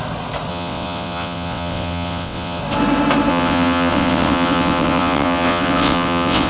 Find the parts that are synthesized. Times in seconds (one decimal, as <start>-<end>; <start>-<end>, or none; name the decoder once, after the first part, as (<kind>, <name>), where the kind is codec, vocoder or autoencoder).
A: 0.5-2.6 (vocoder, WaveNeXt); 3.3-6.5